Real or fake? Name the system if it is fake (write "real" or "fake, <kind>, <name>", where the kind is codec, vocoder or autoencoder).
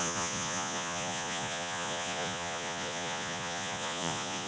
fake, vocoder, Vocos